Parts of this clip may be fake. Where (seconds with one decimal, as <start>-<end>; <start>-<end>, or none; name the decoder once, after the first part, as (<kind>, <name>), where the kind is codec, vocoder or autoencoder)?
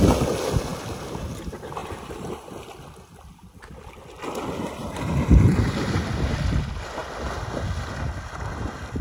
1.8-2.6 (vocoder, BigVGAN v2); 4.8-6.6